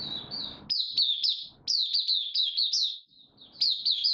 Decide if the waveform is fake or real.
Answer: real